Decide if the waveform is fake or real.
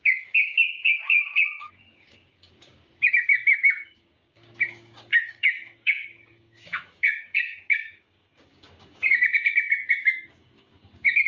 fake